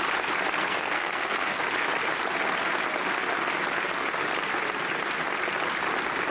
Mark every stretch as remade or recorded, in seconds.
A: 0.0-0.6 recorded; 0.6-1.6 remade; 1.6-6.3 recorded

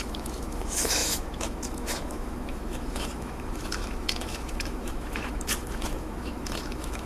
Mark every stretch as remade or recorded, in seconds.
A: 0.0-7.1 remade

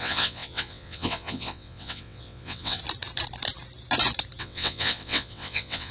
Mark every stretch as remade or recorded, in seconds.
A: 0.0-2.8 remade; 2.8-4.4 recorded; 4.4-5.9 remade

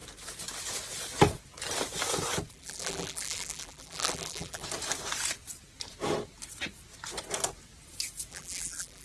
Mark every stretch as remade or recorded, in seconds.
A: 0.0-2.5 recorded; 2.5-4.6 remade; 4.6-8.3 recorded; 8.3-9.0 remade